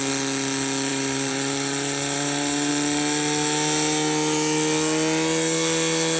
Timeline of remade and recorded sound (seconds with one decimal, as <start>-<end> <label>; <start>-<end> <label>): 0.0-0.9 recorded; 0.9-2.7 remade; 2.7-6.2 recorded